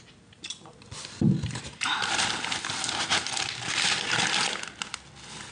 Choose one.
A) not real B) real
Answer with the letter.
B